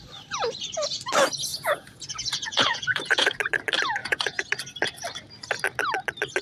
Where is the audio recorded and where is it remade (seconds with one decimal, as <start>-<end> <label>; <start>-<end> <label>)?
0.0-1.5 recorded; 1.5-3.4 remade; 3.4-4.0 recorded; 4.0-4.5 remade; 4.5-6.4 recorded